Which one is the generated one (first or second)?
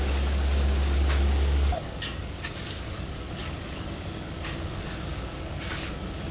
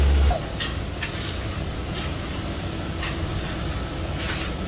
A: first